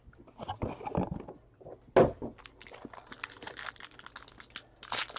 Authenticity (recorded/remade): recorded